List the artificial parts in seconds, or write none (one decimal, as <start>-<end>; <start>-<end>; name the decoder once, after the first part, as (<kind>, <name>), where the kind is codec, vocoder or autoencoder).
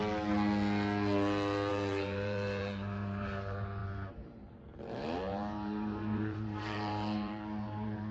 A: 1.7-8.1 (vocoder, BigVGAN v2)